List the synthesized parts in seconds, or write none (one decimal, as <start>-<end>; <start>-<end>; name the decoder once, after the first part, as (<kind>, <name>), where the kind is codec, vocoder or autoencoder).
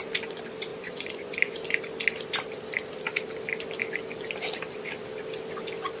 0.7-1.6 (vocoder, Vocos)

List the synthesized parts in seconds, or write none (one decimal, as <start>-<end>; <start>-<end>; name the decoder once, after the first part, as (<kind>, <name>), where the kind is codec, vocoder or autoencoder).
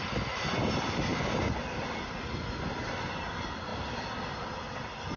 none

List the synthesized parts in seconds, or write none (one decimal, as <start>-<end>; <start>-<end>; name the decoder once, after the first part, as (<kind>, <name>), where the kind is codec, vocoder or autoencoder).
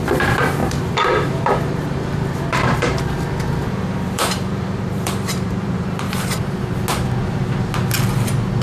0.6-3.0 (vocoder, BigVGAN v2); 3.6-6.4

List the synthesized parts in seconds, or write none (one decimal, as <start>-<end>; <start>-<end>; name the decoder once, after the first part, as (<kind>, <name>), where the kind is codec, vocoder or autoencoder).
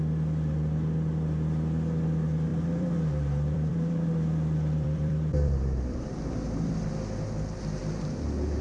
2.5-6.9 (vocoder, BigVGAN v2)